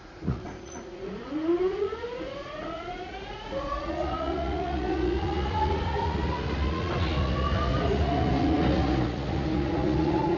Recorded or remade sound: remade